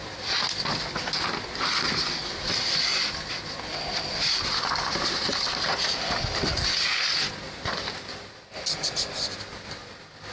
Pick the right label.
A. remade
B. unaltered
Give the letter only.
B